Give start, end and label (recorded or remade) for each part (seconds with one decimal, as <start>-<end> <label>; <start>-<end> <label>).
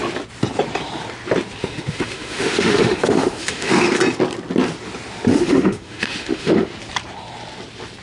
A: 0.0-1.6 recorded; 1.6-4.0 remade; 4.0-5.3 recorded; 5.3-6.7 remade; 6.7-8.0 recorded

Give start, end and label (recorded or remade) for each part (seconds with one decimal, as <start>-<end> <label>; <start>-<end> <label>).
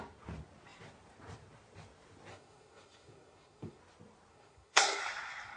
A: 0.0-2.3 recorded; 2.3-3.8 remade; 3.8-4.3 recorded; 4.3-5.0 remade; 5.0-5.6 recorded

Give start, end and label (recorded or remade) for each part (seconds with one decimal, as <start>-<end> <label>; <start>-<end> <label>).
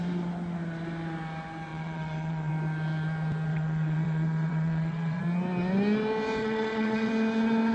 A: 0.0-1.7 recorded; 1.7-2.5 remade; 2.5-3.5 recorded; 3.5-5.2 remade; 5.2-6.4 recorded; 6.4-7.1 remade; 7.1-7.7 recorded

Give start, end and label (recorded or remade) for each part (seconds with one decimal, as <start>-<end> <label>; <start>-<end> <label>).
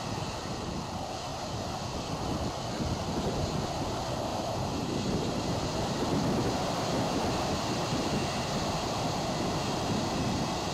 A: 0.0-1.3 recorded; 1.3-1.8 remade; 1.8-4.3 recorded; 4.3-7.2 remade; 7.2-10.7 recorded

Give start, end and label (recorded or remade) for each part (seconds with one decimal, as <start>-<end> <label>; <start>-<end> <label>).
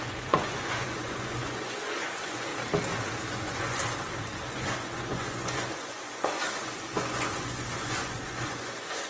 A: 0.0-2.5 remade; 2.5-3.3 recorded; 3.3-3.8 remade; 3.8-4.4 recorded; 4.4-9.1 remade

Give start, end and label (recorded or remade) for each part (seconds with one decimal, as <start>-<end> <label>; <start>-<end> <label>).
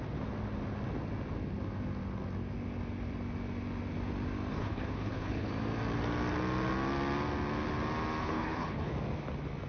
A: 0.0-4.5 recorded; 4.5-5.5 remade; 5.5-8.2 recorded; 8.2-8.9 remade; 8.9-9.7 recorded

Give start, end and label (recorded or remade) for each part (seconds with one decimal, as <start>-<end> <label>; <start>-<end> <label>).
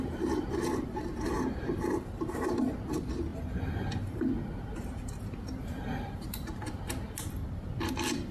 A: 0.0-8.3 recorded